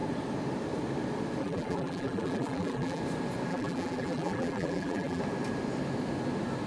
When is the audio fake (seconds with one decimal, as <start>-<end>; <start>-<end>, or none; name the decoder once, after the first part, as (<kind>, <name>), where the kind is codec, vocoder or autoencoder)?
1.4-3.0 (vocoder, BigVGAN v2); 3.5-5.2